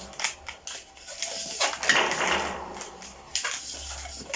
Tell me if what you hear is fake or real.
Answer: real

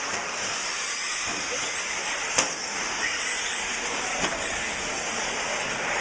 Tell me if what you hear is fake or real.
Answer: real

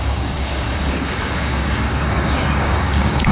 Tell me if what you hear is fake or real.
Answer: fake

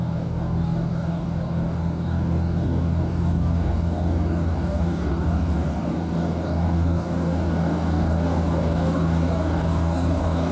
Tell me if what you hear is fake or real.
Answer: fake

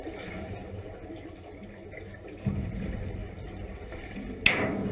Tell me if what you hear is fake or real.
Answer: real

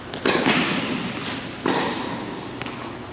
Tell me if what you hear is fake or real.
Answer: real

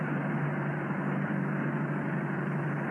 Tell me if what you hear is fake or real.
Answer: real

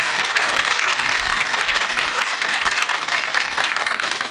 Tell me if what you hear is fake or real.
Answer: fake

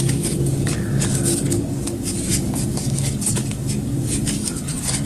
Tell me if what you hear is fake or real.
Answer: fake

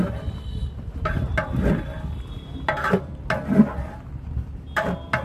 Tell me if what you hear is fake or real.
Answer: real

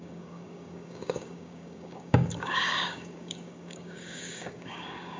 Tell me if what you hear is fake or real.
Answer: fake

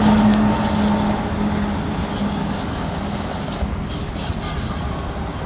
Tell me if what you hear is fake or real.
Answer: real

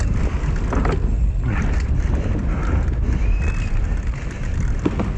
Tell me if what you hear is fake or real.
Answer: real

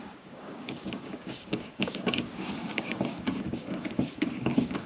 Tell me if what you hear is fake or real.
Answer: fake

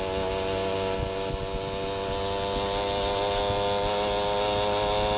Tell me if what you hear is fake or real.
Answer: real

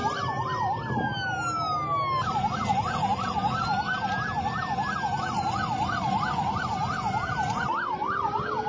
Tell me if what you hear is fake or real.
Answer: real